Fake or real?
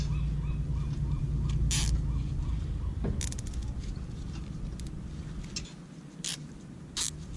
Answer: real